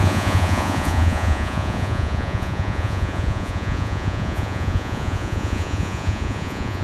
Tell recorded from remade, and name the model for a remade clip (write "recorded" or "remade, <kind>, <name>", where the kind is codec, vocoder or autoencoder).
remade, vocoder, Vocos